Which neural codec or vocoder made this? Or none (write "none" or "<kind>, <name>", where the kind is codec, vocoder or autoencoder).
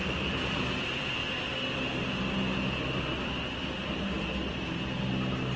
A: none